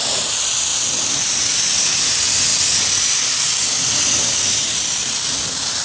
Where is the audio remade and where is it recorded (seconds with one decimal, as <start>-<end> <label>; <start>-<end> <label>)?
0.0-5.8 remade